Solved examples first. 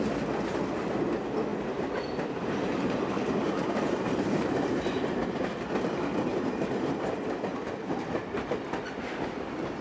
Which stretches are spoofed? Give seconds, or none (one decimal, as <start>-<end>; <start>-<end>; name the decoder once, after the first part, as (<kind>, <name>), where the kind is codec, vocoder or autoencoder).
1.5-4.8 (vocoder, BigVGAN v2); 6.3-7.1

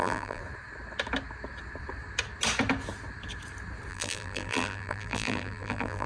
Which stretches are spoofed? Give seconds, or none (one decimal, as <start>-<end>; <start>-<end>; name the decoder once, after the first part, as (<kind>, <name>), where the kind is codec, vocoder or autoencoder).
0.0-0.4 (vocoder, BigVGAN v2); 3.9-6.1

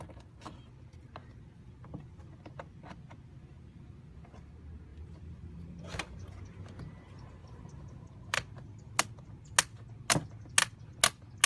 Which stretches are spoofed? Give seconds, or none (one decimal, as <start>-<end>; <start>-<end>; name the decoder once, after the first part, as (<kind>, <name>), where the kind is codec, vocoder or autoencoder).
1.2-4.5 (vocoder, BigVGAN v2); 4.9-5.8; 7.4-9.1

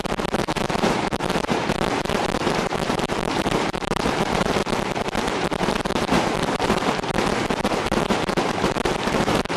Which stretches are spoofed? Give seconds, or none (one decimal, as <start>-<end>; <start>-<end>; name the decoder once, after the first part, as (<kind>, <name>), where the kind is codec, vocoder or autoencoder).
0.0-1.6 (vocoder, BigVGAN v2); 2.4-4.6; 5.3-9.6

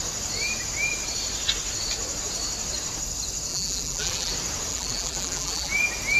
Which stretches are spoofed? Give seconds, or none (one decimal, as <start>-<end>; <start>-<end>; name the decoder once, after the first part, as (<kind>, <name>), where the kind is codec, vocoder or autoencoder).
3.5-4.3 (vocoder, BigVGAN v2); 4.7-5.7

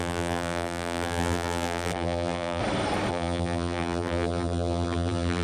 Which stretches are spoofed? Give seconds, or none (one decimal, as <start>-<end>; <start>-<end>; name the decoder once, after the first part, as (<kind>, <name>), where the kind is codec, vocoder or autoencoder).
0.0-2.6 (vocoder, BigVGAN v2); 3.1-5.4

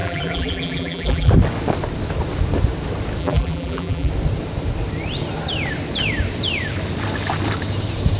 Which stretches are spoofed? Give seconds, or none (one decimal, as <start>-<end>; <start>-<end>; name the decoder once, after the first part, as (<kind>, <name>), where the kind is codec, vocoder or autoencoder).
0.0-1.3 (vocoder, BigVGAN v2); 3.2-4.1

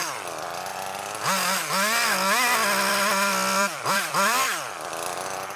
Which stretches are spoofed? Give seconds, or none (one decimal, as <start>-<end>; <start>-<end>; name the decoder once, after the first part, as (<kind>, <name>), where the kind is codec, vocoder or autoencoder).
0.0-0.7 (vocoder, BigVGAN v2); 2.9-5.6